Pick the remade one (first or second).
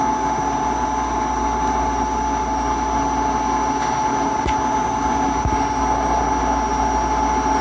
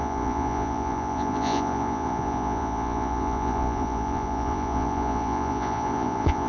second